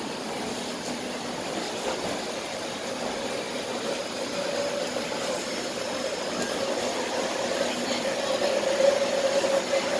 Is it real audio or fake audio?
real